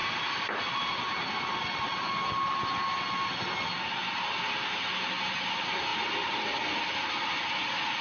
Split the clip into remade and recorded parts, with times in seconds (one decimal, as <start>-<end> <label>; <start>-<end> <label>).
0.0-8.0 recorded